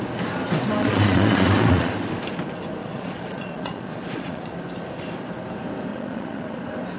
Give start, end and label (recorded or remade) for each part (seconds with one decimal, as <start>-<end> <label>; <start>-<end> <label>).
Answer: 0.0-0.8 recorded; 0.8-1.9 remade; 1.9-2.8 recorded; 2.8-4.5 remade; 4.5-5.9 recorded; 5.9-6.6 remade; 6.6-7.0 recorded